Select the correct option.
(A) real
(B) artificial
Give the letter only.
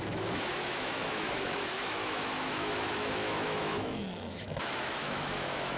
B